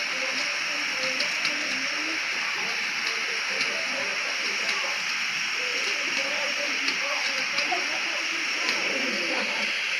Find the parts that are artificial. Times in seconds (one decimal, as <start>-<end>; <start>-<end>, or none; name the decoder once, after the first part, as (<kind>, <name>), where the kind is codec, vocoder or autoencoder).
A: 2.3-3.0 (vocoder, BigVGAN v2); 5.7-10.0